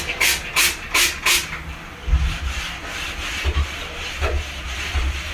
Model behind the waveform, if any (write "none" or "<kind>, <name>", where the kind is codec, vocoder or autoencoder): none